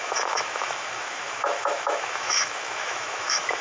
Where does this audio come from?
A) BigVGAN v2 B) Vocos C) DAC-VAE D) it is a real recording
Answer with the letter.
C